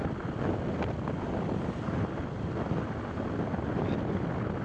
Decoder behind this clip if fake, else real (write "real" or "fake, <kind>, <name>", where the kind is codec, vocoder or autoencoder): real